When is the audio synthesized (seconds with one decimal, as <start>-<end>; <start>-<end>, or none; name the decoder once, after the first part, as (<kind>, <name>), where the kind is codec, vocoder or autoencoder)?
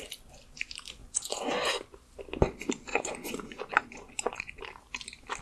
1.0-1.7 (vocoder, Vocos); 2.9-4.6